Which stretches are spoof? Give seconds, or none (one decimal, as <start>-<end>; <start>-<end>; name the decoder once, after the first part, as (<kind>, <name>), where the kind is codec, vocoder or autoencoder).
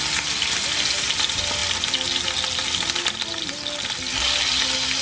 none